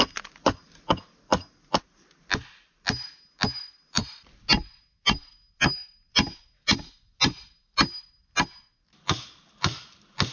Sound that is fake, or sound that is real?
real